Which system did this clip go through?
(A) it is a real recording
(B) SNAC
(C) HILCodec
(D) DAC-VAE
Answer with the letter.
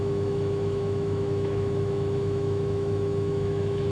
D